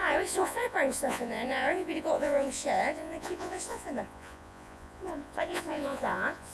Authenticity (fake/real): fake